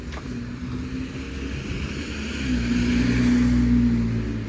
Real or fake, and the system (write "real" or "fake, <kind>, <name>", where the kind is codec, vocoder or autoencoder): real